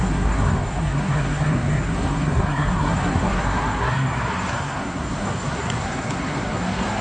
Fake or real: fake